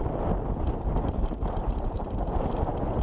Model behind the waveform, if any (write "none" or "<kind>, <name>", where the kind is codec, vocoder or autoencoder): none